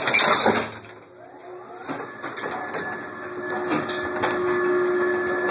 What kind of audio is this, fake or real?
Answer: real